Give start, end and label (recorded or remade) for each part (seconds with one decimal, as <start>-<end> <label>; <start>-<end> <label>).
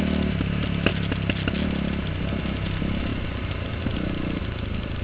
0.0-5.0 recorded